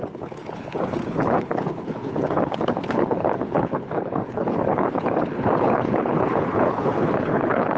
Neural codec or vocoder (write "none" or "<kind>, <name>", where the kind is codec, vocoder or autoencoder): codec, HILCodec